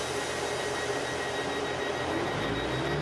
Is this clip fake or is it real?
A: real